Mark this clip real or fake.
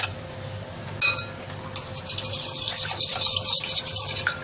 real